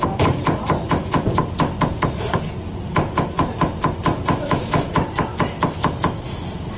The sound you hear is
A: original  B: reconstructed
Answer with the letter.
A